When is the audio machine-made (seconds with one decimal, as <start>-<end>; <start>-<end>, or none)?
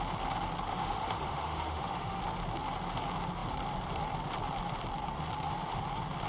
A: 0.7-2.2